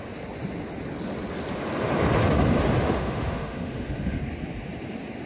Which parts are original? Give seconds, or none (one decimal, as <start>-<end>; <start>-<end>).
0.0-2.8; 4.2-5.3